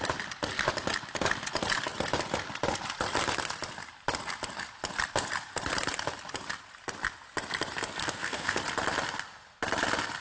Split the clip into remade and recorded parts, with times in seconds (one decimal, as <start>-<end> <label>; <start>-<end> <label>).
0.0-8.0 recorded; 8.0-8.6 remade; 8.6-10.2 recorded